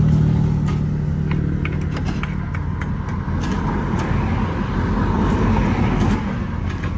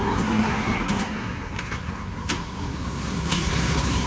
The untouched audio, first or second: first